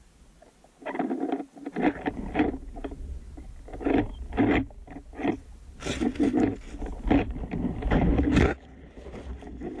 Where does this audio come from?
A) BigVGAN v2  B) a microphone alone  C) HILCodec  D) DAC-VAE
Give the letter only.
B